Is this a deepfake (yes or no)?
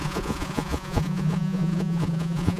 yes